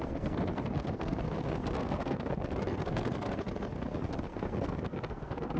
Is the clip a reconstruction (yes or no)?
yes